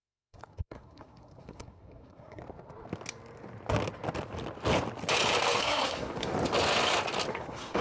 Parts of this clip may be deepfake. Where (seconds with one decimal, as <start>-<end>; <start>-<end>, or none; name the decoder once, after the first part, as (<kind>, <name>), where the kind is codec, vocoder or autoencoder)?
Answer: 0.0-2.4 (codec, SNAC); 5.6-6.3; 7.3-7.8